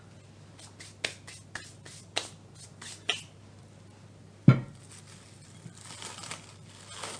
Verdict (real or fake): real